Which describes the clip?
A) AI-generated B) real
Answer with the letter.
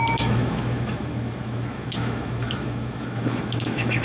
A